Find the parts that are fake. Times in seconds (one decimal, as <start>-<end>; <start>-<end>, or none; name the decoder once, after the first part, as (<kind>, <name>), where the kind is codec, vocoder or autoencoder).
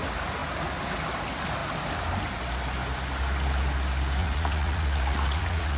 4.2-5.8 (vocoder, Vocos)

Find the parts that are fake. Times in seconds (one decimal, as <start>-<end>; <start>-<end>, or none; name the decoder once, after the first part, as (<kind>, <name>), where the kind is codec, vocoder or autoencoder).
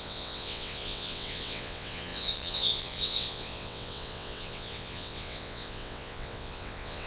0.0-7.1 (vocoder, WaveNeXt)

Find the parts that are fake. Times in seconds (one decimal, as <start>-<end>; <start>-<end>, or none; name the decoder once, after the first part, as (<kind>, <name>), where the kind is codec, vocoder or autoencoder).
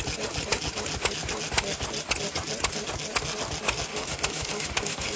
3.9-5.2 (autoencoder, DAC-VAE)